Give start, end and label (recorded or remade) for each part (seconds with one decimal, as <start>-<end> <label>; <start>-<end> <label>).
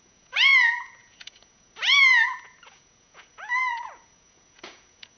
0.0-5.2 remade